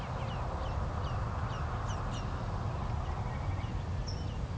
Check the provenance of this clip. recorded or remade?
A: recorded